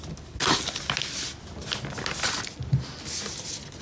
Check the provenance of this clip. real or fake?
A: real